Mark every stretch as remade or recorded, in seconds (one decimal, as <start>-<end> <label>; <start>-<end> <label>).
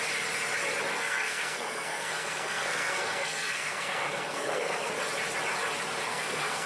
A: 0.0-0.9 recorded; 0.9-4.9 remade; 4.9-6.1 recorded; 6.1-6.7 remade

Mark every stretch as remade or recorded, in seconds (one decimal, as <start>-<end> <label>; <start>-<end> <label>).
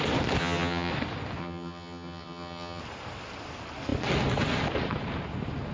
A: 0.0-0.4 recorded; 0.4-0.9 remade; 0.9-1.4 recorded; 1.4-2.8 remade; 2.8-5.7 recorded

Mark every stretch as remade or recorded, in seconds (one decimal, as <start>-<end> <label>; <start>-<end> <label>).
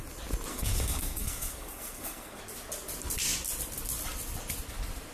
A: 0.0-0.5 recorded; 0.5-2.4 remade; 2.4-5.1 recorded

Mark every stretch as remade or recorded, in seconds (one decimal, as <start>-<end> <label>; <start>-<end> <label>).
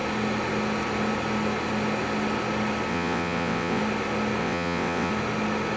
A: 0.0-2.9 recorded; 2.9-3.8 remade; 3.8-4.4 recorded; 4.4-5.1 remade; 5.1-5.8 recorded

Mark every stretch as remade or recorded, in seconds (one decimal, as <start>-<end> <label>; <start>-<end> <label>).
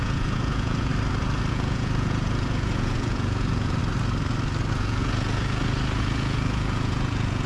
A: 0.0-0.9 remade; 0.9-1.5 recorded; 1.5-3.8 remade; 3.8-4.7 recorded; 4.7-7.5 remade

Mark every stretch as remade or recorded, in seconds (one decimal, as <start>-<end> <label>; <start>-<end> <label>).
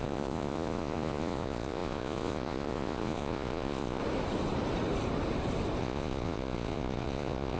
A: 0.0-4.0 remade; 4.0-5.8 recorded; 5.8-7.6 remade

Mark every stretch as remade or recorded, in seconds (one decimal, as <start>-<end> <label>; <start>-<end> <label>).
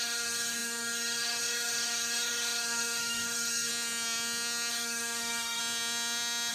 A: 0.0-3.7 remade; 3.7-4.7 recorded; 4.7-5.6 remade; 5.6-6.5 recorded